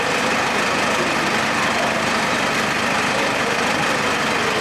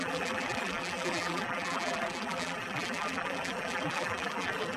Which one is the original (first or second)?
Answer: first